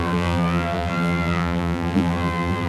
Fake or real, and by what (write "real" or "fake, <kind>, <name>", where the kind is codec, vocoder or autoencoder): fake, vocoder, BigVGAN v2